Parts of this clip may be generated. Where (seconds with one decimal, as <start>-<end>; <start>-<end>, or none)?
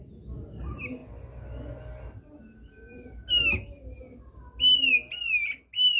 none